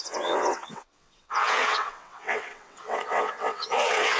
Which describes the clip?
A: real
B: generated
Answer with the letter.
B